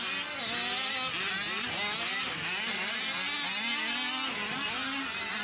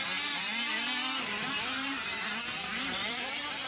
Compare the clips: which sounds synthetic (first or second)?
second